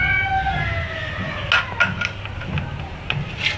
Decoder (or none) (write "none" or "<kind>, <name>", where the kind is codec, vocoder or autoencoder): none